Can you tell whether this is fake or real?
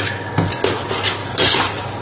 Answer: real